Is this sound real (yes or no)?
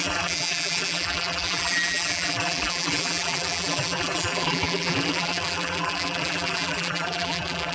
no